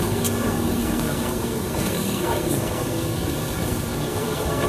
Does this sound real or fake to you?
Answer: fake